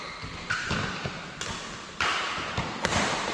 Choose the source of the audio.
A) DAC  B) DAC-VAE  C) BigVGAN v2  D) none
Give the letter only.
D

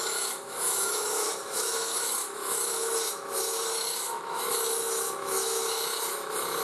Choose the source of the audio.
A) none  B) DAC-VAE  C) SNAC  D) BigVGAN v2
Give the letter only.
B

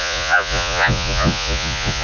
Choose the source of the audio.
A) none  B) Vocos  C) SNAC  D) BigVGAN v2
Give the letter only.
B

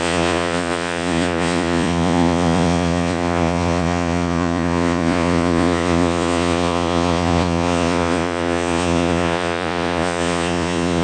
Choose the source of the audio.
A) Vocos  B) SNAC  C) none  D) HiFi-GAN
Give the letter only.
A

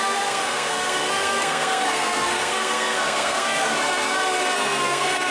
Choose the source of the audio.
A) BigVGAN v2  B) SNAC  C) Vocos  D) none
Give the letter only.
B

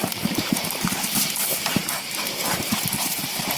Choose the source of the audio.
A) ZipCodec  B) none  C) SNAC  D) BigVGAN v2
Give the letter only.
D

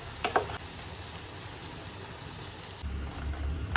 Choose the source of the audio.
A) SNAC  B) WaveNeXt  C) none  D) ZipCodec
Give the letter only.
C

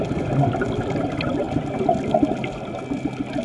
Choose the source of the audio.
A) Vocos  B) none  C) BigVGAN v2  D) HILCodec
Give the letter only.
B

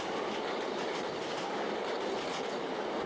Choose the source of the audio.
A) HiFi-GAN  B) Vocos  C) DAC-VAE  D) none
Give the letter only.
D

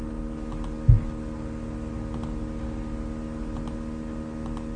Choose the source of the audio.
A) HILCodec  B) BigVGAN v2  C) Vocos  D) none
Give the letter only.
D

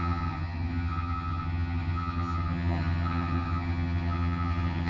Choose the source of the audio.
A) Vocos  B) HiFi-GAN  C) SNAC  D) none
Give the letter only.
B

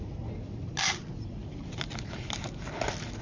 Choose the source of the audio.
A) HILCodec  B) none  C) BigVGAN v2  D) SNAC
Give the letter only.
B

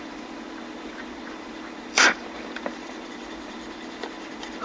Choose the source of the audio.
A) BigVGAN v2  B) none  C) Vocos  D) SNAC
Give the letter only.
A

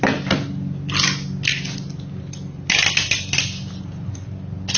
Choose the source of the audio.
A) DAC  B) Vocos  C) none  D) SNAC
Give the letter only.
C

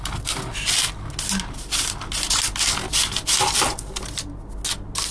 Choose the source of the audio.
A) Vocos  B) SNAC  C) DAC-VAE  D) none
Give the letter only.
D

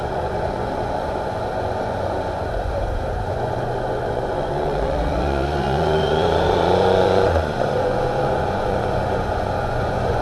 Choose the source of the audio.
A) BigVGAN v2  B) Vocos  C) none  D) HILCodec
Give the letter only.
B